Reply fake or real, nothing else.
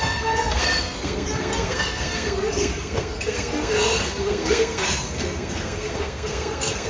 fake